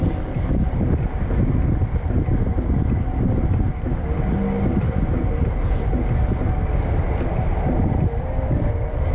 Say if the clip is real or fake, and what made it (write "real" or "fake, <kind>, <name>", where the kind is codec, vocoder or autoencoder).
real